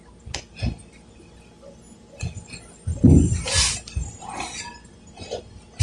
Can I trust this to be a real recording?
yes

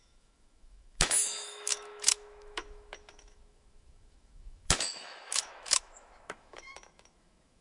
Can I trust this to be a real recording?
no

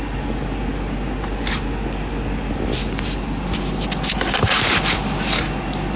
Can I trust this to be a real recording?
yes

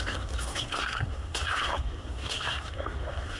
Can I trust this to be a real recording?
no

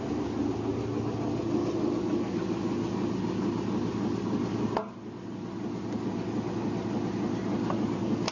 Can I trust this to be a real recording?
yes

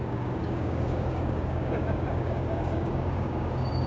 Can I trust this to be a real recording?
no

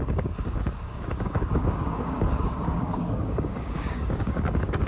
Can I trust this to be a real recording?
no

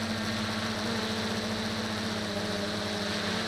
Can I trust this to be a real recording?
yes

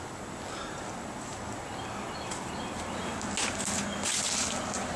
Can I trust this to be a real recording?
yes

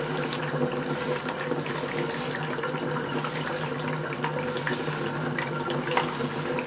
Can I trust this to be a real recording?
yes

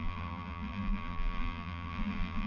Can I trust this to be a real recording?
no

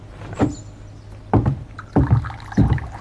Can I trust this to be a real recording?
yes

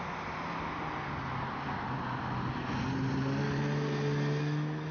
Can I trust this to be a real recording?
yes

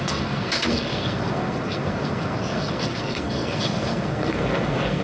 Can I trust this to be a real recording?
no